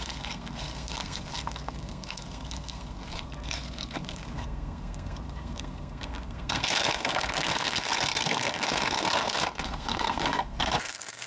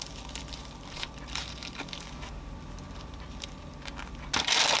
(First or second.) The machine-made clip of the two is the first